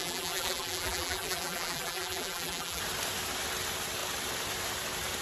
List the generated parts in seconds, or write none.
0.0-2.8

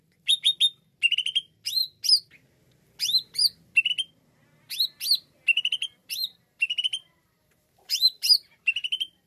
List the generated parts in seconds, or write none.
6.0-9.3